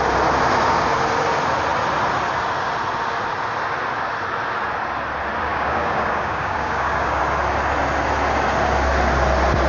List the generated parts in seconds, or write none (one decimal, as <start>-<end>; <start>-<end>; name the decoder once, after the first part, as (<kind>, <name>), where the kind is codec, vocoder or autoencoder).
5.5-7.2 (codec, DAC)